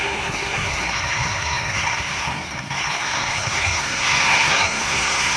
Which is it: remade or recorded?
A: remade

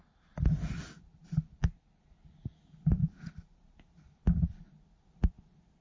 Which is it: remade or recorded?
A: recorded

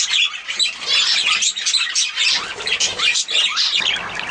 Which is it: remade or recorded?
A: recorded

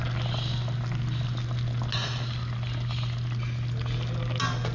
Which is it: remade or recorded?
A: recorded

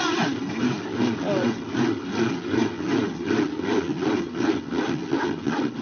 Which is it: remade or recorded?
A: recorded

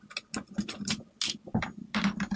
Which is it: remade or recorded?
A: recorded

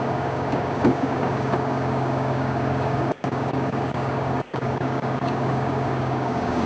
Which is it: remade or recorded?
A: remade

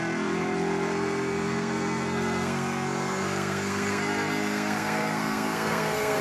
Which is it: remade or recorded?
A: remade